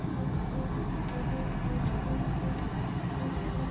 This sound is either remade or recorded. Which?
recorded